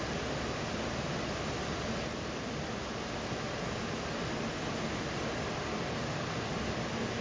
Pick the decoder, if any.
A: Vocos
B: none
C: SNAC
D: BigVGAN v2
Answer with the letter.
B